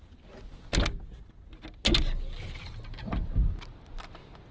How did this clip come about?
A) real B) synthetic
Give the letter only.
A